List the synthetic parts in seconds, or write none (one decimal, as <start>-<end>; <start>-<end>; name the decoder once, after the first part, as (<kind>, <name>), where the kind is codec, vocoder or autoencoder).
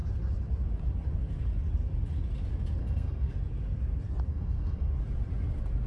2.8-3.3 (codec, SNAC); 4.3-4.9